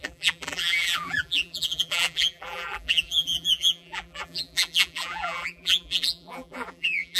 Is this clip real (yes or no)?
no